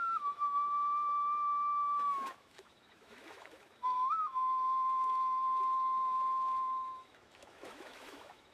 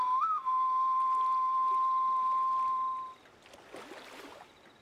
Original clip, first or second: second